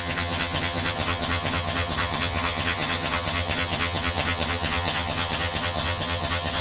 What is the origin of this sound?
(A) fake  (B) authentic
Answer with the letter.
A